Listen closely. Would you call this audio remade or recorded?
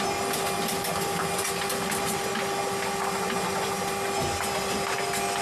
recorded